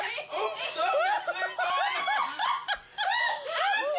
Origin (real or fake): real